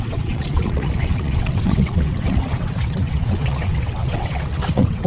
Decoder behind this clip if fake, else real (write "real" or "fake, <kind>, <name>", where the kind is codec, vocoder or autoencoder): fake, vocoder, WaveNeXt